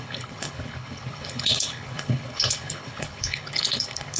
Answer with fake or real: fake